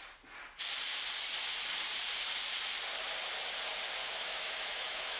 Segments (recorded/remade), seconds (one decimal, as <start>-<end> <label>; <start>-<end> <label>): 0.0-4.0 recorded; 4.0-5.2 remade